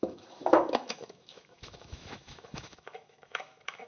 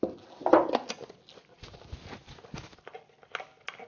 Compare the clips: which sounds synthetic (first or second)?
first